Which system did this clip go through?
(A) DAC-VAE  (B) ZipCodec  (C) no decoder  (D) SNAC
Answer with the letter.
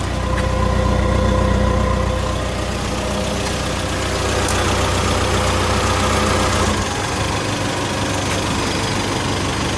C